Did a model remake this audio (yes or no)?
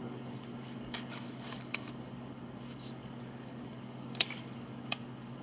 yes